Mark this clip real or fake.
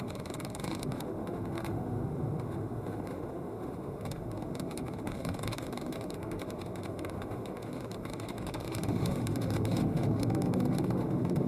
fake